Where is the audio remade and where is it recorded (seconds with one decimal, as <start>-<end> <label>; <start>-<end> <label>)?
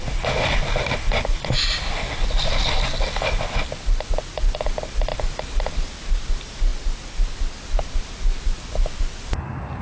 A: 0.0-9.8 recorded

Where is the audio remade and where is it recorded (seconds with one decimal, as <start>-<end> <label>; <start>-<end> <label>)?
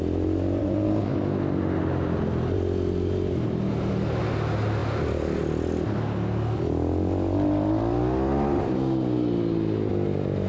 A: 0.0-0.6 recorded; 0.6-1.1 remade; 1.1-10.5 recorded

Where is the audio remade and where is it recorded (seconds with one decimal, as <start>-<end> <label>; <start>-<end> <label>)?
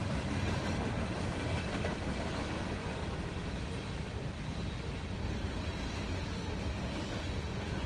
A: 0.0-2.3 recorded; 2.3-3.0 remade; 3.0-7.2 recorded; 7.2-7.9 remade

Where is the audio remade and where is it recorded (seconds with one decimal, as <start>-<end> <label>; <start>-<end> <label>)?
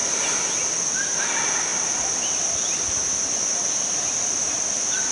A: 0.0-5.1 recorded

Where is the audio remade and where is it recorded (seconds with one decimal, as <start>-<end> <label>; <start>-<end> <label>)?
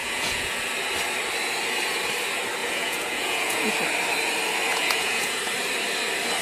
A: 0.0-0.6 remade; 0.6-2.6 recorded; 2.6-3.7 remade; 3.7-4.7 recorded; 4.7-5.4 remade; 5.4-6.4 recorded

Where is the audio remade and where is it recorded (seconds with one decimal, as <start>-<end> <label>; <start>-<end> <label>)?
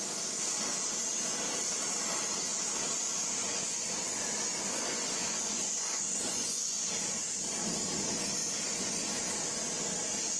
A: 0.0-3.4 recorded; 3.4-6.9 remade; 6.9-8.4 recorded; 8.4-9.4 remade; 9.4-10.4 recorded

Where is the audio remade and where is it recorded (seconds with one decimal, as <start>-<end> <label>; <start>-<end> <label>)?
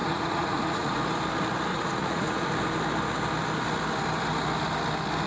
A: 0.0-1.0 remade; 1.0-1.7 recorded; 1.7-2.5 remade; 2.5-5.3 recorded